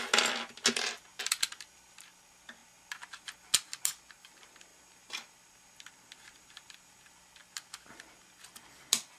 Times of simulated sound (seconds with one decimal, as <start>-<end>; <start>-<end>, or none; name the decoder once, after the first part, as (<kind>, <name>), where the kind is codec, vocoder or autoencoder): none